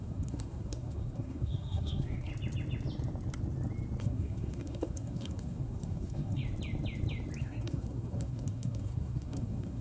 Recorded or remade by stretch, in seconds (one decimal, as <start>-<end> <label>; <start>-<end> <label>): 0.0-2.3 remade; 2.3-4.0 recorded; 4.0-6.4 remade; 6.4-7.4 recorded; 7.4-9.8 remade